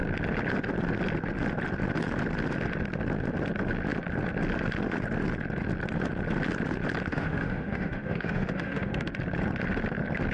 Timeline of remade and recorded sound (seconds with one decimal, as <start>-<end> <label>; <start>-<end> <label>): 0.0-7.1 recorded; 7.1-9.1 remade; 9.1-10.3 recorded